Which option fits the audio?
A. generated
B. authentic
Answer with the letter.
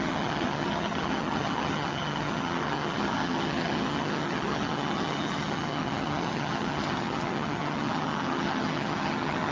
A